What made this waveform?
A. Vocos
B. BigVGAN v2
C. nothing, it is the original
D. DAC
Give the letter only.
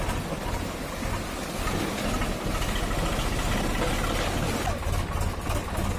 C